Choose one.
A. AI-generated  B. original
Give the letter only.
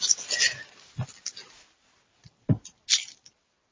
B